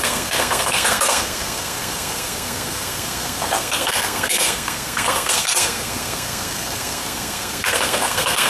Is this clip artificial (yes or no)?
yes